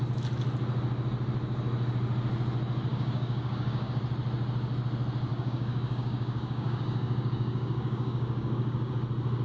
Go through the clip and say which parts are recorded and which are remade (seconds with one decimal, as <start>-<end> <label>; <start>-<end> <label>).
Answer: 0.0-2.9 recorded; 2.9-4.0 remade; 4.0-5.3 recorded; 5.3-8.9 remade; 8.9-9.4 recorded